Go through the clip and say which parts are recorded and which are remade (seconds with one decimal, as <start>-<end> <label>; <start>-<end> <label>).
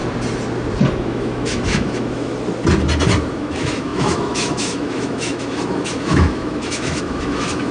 0.0-1.0 recorded; 1.0-2.3 remade; 2.3-3.3 recorded; 3.3-7.7 remade